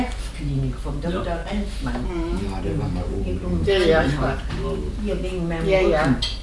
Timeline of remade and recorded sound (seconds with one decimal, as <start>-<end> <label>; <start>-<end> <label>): 0.0-6.4 recorded